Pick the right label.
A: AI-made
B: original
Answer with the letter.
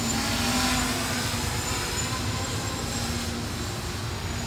B